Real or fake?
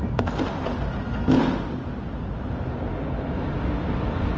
real